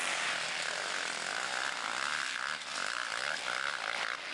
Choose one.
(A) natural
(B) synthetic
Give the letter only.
A